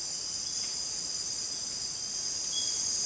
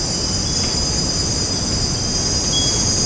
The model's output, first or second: first